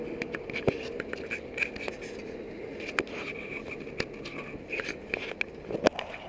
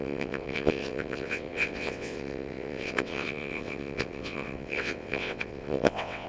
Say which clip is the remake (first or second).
second